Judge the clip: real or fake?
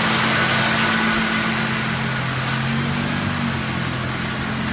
real